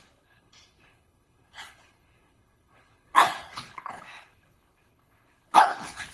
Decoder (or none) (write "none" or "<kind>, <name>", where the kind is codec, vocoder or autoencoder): codec, HILCodec